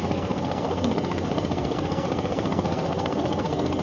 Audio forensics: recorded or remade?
remade